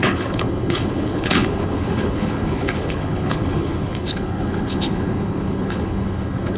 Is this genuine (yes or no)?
no